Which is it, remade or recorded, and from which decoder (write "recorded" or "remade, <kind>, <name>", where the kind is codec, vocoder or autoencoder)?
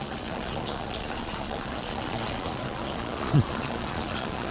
remade, vocoder, Vocos